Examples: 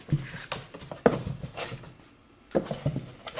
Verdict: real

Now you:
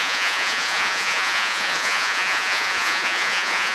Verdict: fake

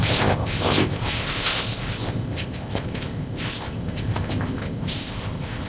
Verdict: fake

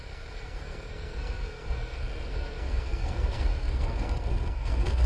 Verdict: fake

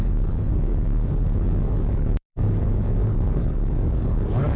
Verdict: fake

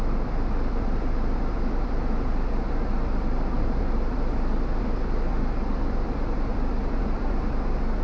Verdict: fake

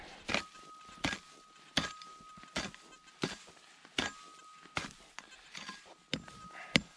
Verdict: real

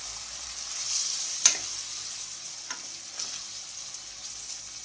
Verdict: real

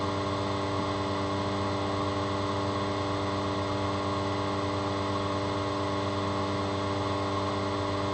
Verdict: real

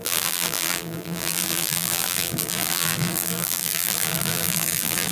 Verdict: fake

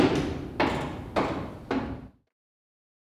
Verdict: real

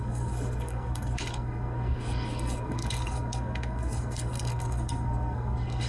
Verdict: fake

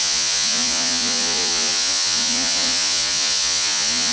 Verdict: fake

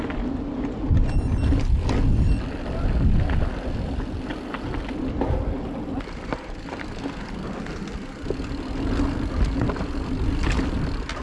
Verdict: real